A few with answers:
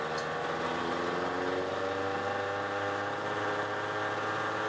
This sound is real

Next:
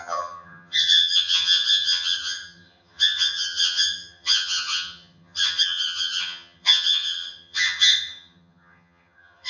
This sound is fake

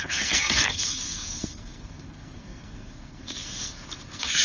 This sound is fake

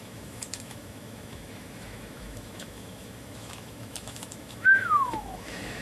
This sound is fake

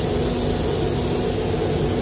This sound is real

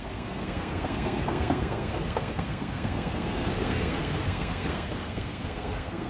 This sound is fake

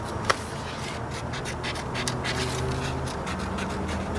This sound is real